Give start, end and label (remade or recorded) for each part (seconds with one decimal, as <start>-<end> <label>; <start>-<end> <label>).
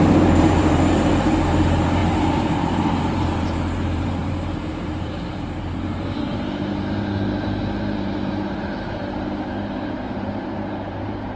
0.0-11.4 remade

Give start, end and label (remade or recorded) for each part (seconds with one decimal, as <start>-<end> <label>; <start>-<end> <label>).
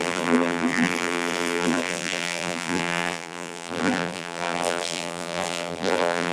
0.0-6.3 remade